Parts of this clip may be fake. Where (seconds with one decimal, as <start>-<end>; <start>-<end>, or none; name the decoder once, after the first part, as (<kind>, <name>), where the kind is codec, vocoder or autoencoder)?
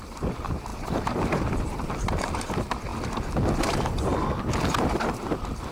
0.0-2.9 (vocoder, BigVGAN v2); 3.6-4.1; 4.8-5.7